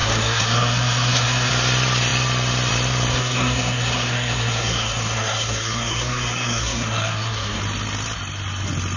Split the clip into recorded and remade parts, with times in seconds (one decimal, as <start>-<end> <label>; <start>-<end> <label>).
0.0-1.5 remade; 1.5-3.1 recorded; 3.1-7.6 remade; 7.6-9.0 recorded